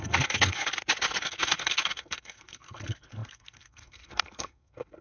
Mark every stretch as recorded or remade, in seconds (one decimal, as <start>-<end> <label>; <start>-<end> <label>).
0.0-0.7 remade; 0.7-1.2 recorded; 1.2-5.0 remade